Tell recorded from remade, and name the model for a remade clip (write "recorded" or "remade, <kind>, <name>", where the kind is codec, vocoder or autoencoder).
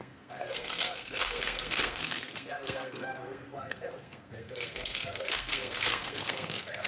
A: remade, codec, SNAC